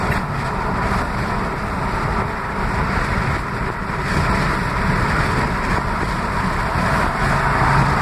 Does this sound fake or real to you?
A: real